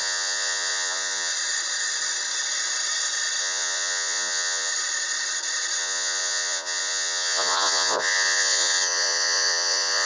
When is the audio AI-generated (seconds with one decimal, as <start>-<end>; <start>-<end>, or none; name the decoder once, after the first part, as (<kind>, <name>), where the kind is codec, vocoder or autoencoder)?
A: 0.0-1.3 (vocoder, Vocos); 3.4-4.7; 5.8-10.1